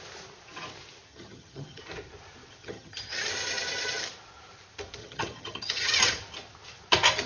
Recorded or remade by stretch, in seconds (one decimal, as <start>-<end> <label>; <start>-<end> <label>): 0.0-1.1 recorded; 1.1-1.8 remade; 1.8-2.6 recorded; 2.6-3.1 remade; 3.1-5.0 recorded; 5.0-5.9 remade; 5.9-7.3 recorded